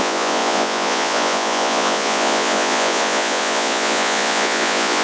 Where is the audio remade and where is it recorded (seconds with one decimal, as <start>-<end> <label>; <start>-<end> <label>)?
0.0-5.0 remade